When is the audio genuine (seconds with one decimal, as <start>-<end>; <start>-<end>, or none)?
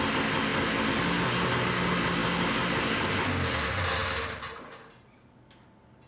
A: 0.0-6.1